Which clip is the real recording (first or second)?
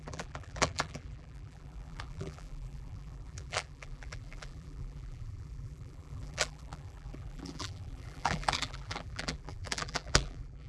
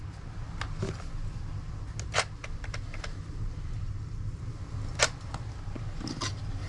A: second